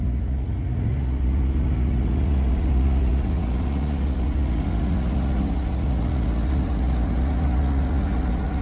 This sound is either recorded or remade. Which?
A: remade